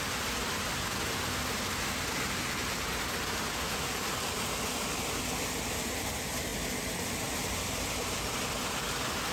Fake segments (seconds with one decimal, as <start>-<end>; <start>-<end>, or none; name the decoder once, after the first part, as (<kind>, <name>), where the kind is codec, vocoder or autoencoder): none